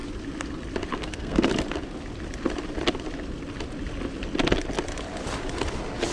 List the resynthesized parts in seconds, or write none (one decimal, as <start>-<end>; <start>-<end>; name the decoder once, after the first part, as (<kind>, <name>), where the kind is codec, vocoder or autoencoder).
1.0-1.5 (codec, SNAC)